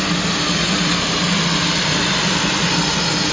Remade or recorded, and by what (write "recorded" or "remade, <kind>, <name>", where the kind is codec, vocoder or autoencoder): recorded